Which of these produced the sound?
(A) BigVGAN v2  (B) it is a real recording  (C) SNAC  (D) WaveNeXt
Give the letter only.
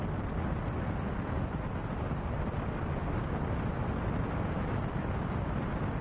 B